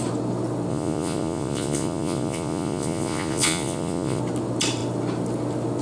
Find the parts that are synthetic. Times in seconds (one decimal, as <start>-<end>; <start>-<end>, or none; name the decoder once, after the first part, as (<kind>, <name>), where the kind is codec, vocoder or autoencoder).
0.7-4.2 (vocoder, Vocos)